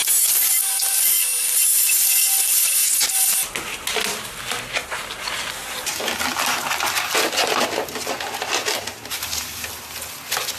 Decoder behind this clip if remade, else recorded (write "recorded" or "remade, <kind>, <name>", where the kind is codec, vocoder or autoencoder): recorded